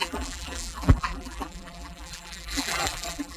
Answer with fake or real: fake